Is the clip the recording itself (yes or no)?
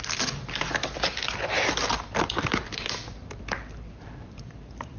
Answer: no